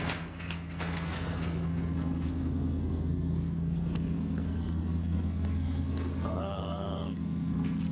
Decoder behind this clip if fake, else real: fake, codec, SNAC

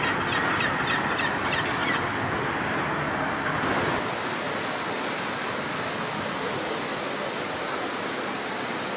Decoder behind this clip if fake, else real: real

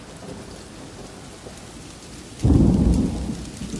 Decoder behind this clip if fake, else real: real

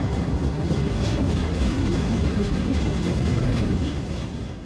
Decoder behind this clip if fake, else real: fake, codec, SNAC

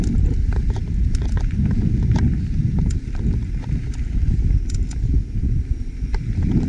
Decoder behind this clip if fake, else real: real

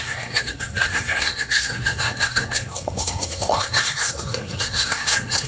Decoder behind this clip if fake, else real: fake, codec, SNAC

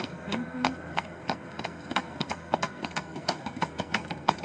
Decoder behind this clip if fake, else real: fake, codec, SNAC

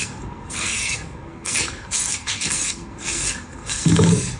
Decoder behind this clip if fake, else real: fake, codec, SNAC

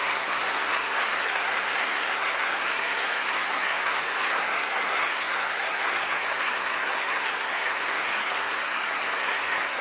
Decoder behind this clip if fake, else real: fake, codec, SNAC